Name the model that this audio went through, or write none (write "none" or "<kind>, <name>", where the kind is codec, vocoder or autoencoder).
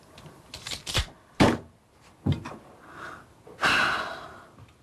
none